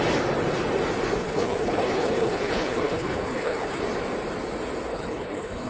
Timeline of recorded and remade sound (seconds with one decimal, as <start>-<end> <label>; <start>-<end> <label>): 0.0-1.2 recorded; 1.2-3.8 remade; 3.8-4.9 recorded; 4.9-5.7 remade